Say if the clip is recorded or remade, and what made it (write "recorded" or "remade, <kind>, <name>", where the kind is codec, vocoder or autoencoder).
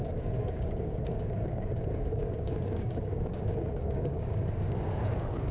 remade, codec, DAC